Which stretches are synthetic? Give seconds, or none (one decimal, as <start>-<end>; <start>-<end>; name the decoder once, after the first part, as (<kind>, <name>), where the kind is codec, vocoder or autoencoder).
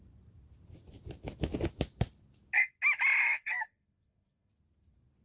3.2-4.5 (codec, SNAC)